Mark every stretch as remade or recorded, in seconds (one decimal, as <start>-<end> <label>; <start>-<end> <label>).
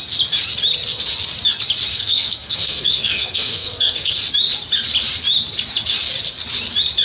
0.0-1.9 recorded; 1.9-4.2 remade; 4.2-7.0 recorded